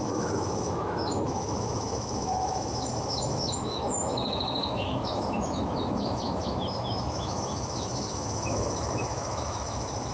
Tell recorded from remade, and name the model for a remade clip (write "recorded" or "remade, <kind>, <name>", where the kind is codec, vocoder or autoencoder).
remade, autoencoder, DAC-VAE